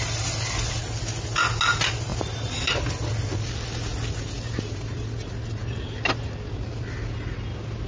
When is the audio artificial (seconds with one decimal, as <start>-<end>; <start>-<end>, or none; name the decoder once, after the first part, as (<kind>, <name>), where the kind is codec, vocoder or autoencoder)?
none